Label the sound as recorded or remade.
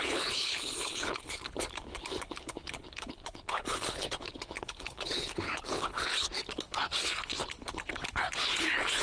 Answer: remade